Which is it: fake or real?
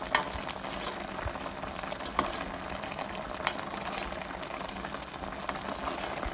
real